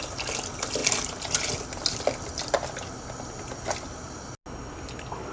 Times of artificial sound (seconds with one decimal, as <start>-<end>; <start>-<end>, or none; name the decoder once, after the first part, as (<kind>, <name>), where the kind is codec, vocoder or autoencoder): none